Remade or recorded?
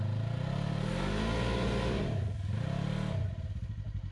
recorded